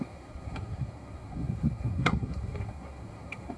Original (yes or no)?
no